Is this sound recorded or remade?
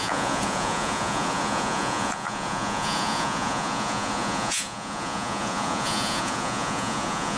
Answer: remade